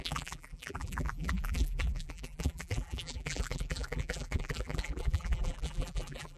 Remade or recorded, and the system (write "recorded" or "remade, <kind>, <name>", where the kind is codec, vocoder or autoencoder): remade, vocoder, BigVGAN v2